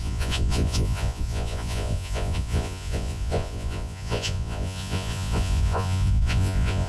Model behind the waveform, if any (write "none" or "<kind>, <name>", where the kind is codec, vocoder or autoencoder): vocoder, Vocos